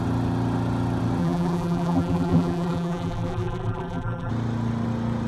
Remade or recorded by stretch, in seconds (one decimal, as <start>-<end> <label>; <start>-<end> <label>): 0.0-1.2 recorded; 1.2-4.3 remade; 4.3-5.3 recorded